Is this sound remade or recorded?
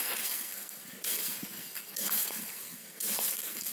remade